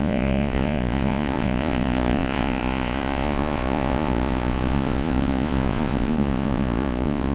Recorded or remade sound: remade